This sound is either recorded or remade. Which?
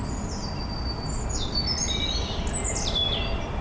recorded